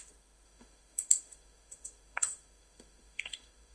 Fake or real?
fake